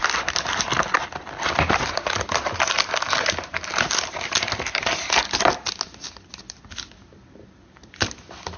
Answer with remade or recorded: recorded